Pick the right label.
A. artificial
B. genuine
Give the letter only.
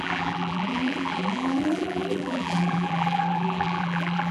A